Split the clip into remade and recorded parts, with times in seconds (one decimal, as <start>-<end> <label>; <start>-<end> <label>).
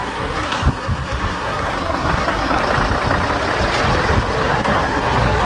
0.0-2.6 remade; 2.6-4.4 recorded; 4.4-5.4 remade